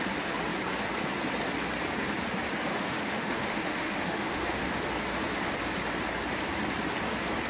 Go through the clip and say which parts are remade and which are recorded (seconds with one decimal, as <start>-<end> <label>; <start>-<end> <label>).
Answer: 0.0-2.7 recorded; 2.7-4.8 remade; 4.8-7.5 recorded